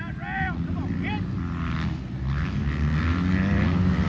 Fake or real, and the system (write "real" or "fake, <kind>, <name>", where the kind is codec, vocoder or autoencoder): real